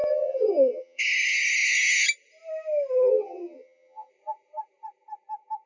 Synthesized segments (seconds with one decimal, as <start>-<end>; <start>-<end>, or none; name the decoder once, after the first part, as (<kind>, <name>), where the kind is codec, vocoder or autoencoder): 0.0-1.0 (vocoder, HiFi-GAN); 3.1-4.1